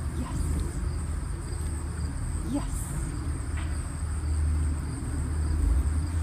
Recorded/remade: recorded